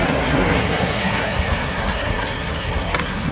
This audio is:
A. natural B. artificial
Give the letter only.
B